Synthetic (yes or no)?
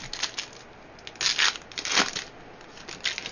no